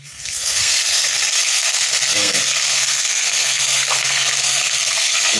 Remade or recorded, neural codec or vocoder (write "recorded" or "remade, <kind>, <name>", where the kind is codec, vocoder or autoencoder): remade, codec, SNAC